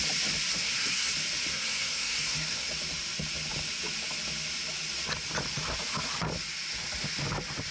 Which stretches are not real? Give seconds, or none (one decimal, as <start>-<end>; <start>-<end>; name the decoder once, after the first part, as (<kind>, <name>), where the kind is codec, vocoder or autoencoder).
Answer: 0.5-1.1 (codec, SNAC); 1.5-2.7